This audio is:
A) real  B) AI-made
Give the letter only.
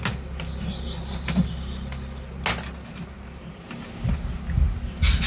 A